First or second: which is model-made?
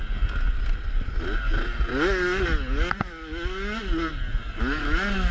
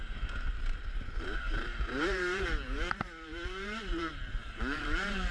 second